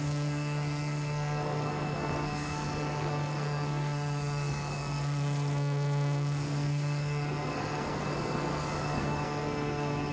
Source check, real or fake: fake